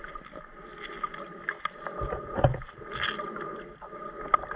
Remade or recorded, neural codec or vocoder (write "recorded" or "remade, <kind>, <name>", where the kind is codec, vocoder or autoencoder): recorded